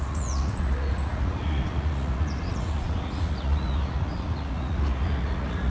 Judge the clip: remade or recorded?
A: remade